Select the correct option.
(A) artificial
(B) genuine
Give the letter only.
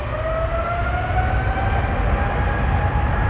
B